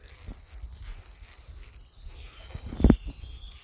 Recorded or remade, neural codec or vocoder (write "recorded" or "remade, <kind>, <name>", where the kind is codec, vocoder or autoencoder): recorded